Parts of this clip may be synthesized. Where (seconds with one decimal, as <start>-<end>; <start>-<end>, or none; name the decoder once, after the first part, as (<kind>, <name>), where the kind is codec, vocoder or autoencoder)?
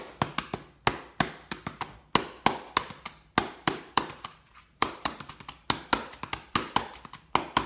3.4-5.3 (vocoder, BigVGAN v2)